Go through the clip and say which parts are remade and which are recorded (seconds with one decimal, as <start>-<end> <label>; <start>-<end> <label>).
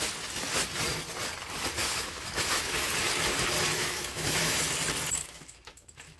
0.0-1.8 recorded; 1.8-2.9 remade; 2.9-3.8 recorded; 3.8-4.6 remade; 4.6-5.2 recorded; 5.2-6.2 remade